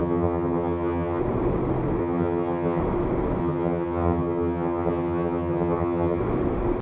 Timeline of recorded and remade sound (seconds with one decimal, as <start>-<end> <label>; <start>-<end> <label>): 0.0-1.2 remade; 1.2-2.0 recorded; 2.0-2.8 remade; 2.8-3.4 recorded; 3.4-6.2 remade; 6.2-6.8 recorded